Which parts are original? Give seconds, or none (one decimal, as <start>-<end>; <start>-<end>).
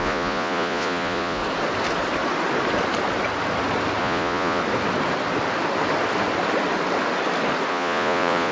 1.4-4.0; 4.6-7.7